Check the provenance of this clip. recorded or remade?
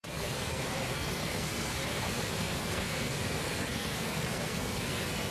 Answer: remade